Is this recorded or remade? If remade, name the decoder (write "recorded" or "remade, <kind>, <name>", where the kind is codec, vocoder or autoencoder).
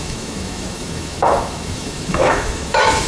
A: remade, autoencoder, DAC-VAE